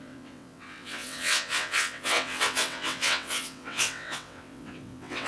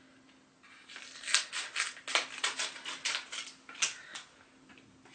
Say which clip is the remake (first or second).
first